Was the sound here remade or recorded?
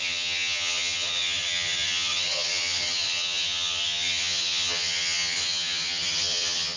remade